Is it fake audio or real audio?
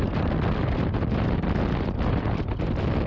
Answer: real